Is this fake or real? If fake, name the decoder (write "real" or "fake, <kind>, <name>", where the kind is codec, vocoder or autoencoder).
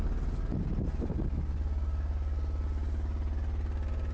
real